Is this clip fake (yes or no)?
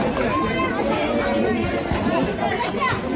no